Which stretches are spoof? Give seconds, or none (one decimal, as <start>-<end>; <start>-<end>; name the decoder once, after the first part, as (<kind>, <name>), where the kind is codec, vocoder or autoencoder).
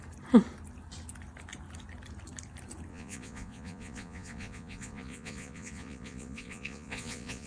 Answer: 2.9-7.5 (vocoder, Vocos)